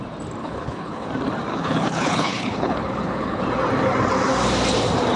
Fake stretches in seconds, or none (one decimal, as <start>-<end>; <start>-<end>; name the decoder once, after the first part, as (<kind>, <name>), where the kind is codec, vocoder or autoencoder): 0.4-1.1 (codec, HILCodec); 1.5-3.4